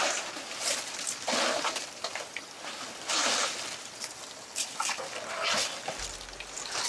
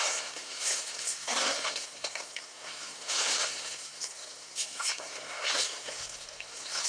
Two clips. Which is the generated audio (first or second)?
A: second